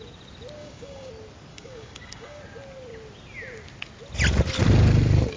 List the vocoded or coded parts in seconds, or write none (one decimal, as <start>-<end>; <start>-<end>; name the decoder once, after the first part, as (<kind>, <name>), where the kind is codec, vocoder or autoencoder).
0.6-1.1 (codec, DAC); 1.5-2.4